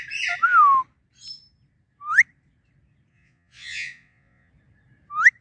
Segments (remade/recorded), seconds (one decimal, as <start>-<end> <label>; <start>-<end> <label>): 0.0-3.1 recorded; 3.1-4.5 remade; 4.5-5.4 recorded